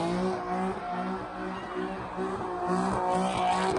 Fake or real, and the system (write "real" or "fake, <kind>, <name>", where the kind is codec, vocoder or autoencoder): real